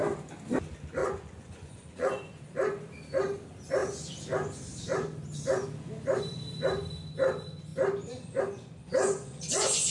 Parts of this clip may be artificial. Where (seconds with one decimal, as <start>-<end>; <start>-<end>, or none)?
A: 1.0-2.4; 8.9-9.9